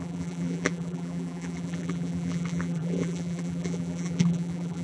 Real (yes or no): no